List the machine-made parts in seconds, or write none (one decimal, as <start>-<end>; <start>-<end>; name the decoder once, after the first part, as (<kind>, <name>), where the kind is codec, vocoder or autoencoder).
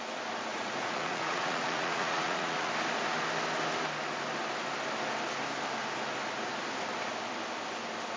0.5-2.7 (vocoder, Vocos)